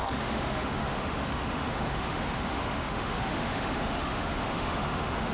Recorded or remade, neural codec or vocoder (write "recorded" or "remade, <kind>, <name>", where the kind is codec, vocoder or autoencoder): remade, autoencoder, DAC-VAE